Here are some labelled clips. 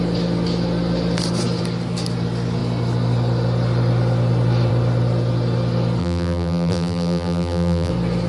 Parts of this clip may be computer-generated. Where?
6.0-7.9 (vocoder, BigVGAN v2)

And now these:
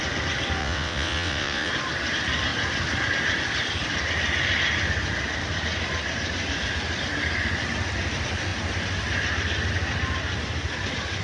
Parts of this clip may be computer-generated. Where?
0.6-1.7 (vocoder, WaveNeXt)

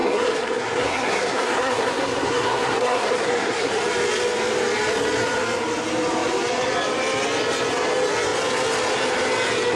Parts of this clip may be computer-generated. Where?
0.0-3.7 (codec, SNAC)

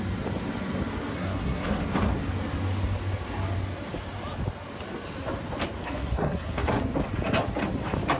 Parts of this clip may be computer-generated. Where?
1.1-1.8 (codec, SNAC); 5.8-6.8

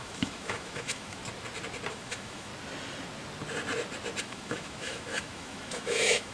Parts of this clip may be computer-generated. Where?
0.0-1.2 (autoencoder, DAC-VAE); 1.9-2.5; 4.2-6.3

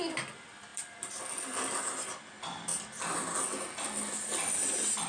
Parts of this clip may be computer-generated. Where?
0.0-5.1 (vocoder, BigVGAN v2)